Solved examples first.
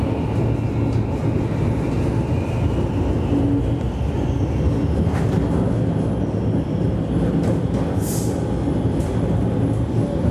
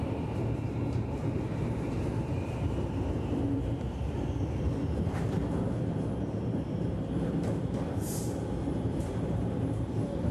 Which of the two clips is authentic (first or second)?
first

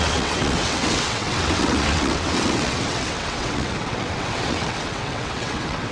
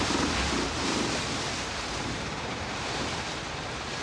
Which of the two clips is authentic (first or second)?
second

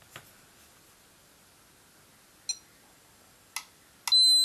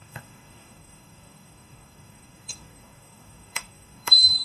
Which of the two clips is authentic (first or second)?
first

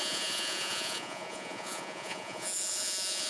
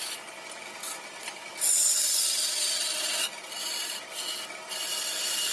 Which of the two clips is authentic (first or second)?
second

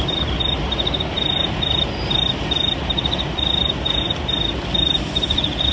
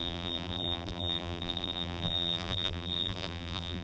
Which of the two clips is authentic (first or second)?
first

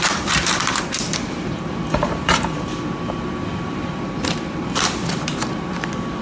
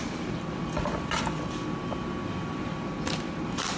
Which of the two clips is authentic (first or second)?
second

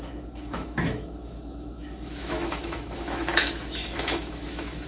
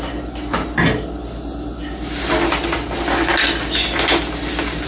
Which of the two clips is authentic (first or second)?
second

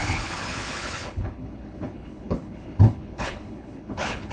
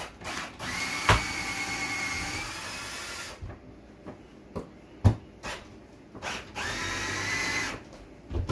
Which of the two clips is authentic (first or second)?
second